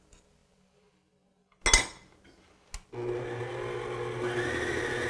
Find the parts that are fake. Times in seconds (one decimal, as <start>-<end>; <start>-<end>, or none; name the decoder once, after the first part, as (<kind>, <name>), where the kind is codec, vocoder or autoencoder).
none